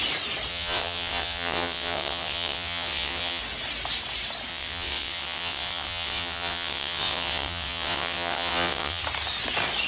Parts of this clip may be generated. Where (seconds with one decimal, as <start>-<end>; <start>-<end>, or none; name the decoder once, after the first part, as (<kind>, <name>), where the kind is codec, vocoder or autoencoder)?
0.5-3.4 (vocoder, WaveNeXt); 4.5-9.0